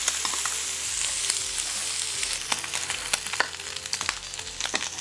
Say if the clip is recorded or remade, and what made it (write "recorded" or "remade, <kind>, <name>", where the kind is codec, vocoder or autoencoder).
recorded